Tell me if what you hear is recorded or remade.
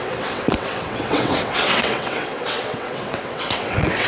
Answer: remade